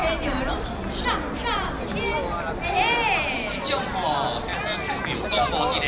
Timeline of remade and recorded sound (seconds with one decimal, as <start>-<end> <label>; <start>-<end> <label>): 0.0-5.9 recorded